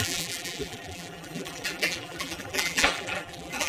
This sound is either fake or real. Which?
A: fake